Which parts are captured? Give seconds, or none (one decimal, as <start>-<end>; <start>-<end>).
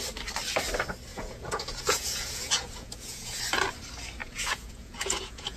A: 0.0-1.1; 3.4-4.2